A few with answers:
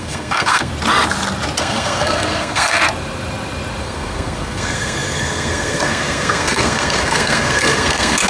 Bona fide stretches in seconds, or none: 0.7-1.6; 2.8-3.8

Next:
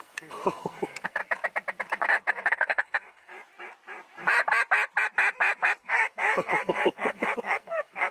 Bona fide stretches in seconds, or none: 1.2-2.5; 3.3-5.8